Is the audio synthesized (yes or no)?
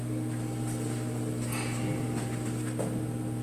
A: no